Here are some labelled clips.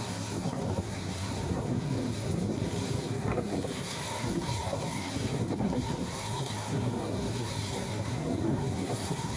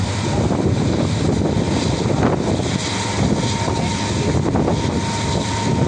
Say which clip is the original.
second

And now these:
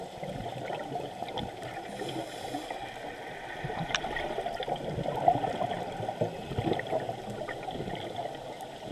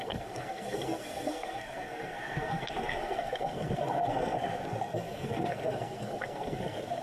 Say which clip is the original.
first